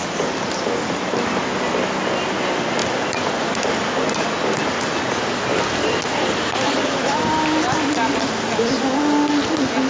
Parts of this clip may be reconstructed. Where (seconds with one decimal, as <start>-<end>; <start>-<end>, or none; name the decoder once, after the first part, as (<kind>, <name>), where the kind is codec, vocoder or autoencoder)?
none